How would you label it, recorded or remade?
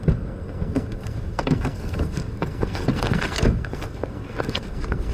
remade